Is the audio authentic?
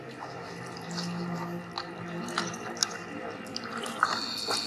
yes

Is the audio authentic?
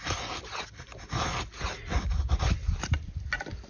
yes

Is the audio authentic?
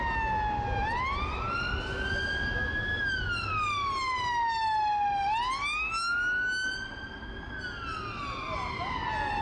yes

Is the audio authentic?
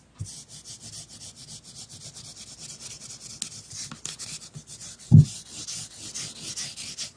yes